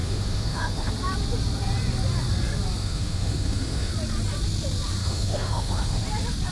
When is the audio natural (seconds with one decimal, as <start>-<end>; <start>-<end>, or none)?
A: 0.9-2.8; 3.9-5.0; 6.0-6.5